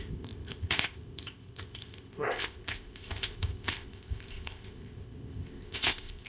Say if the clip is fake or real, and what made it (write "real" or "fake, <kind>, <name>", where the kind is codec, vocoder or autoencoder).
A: fake, codec, ZipCodec